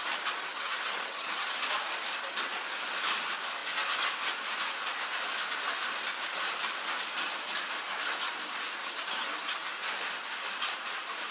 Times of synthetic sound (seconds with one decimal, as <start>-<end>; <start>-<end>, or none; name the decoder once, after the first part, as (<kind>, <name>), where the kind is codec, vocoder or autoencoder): 0.5-1.6 (vocoder, HiFi-GAN); 8.8-9.7